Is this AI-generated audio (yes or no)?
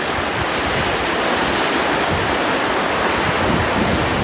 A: no